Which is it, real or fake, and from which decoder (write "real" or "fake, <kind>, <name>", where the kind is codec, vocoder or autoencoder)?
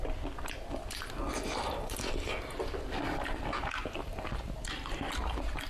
real